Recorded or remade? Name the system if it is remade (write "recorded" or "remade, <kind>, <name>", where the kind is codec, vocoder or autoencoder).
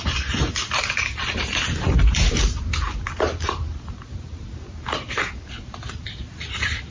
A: remade, vocoder, BigVGAN v2